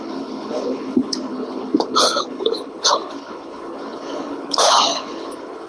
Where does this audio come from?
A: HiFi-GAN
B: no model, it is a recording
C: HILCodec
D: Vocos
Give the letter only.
C